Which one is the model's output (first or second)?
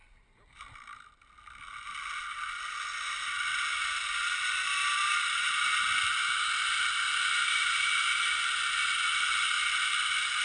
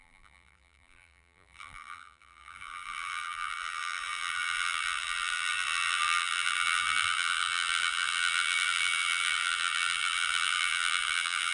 second